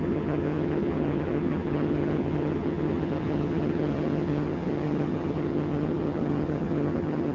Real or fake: fake